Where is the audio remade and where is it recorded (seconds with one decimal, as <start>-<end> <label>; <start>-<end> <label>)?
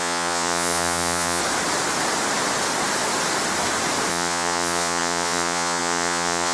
0.0-1.4 remade; 1.4-4.1 recorded; 4.1-6.5 remade